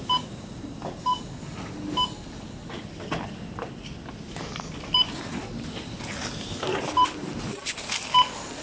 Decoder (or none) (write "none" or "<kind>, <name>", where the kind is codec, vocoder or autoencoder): none